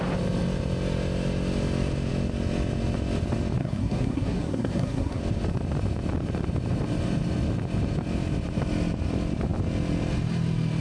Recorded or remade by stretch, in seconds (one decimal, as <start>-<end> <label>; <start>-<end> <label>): 0.0-3.6 recorded; 3.6-5.2 remade; 5.2-10.8 recorded